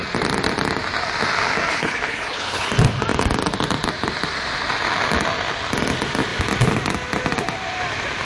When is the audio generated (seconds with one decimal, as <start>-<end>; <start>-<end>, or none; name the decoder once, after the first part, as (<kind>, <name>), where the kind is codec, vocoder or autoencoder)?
1.7-2.7 (codec, HILCodec)